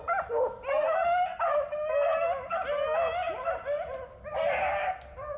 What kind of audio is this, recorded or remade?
recorded